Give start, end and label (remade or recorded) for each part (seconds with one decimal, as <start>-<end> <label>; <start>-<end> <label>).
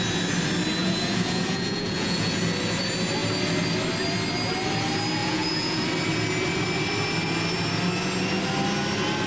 0.0-0.8 recorded; 0.8-2.4 remade; 2.4-5.2 recorded; 5.2-5.8 remade; 5.8-9.3 recorded